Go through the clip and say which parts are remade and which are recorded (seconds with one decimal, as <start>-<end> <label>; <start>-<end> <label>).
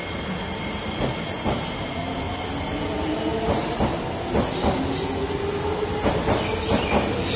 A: 0.0-7.4 recorded